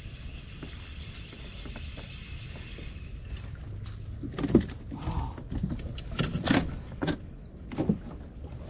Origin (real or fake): real